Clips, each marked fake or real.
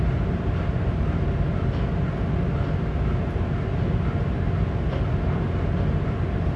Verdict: real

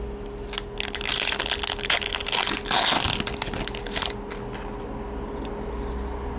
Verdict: real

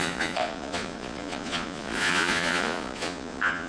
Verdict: fake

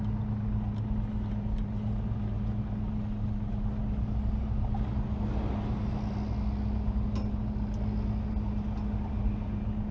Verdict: real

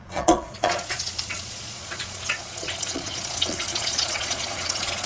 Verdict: fake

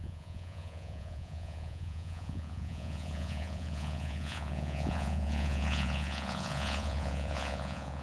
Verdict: fake